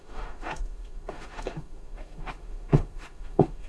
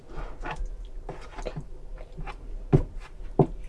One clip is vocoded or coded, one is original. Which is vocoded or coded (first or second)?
first